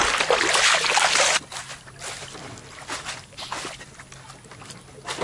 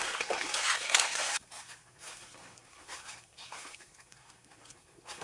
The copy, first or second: second